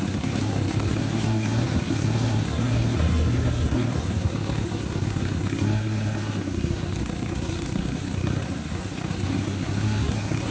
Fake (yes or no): yes